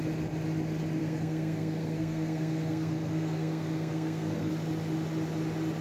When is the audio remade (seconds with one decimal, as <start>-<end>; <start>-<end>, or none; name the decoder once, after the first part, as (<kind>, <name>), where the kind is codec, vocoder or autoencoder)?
1.0-4.5 (codec, SNAC)